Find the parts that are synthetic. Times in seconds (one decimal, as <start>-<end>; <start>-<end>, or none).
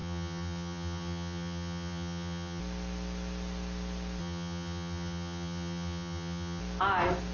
0.0-2.6; 4.2-6.6